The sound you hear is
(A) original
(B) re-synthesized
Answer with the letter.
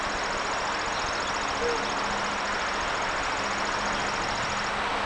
A